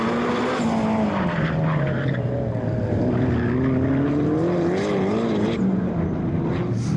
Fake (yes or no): no